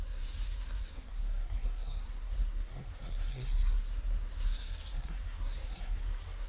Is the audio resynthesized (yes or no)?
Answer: yes